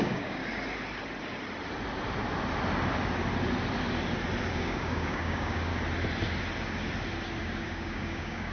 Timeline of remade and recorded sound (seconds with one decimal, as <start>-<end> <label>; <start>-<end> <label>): 0.0-0.4 remade; 0.4-4.5 recorded; 4.5-5.7 remade; 5.7-7.4 recorded; 7.4-8.5 remade